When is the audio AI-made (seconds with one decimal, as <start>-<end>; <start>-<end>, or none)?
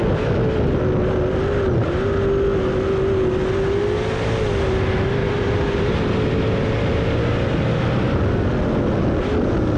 5.2-5.9